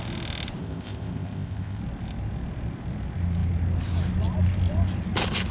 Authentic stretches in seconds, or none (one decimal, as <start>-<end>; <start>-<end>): 0.0-0.6; 1.8-5.5

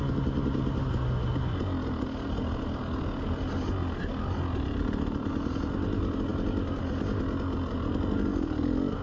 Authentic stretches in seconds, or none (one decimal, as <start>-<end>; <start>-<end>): 0.0-9.0